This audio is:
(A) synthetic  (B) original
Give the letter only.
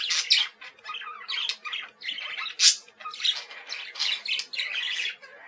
B